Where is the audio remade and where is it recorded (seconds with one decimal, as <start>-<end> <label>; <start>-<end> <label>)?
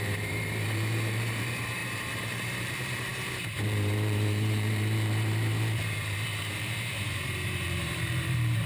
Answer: 0.0-8.7 remade